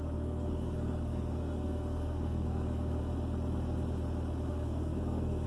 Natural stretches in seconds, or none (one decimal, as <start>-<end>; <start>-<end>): 3.0-4.5